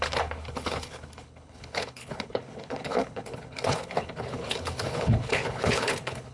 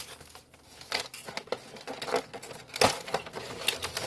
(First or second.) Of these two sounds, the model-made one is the first